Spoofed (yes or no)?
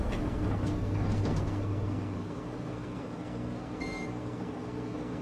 yes